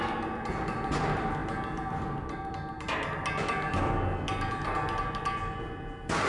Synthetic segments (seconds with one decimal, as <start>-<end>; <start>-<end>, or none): none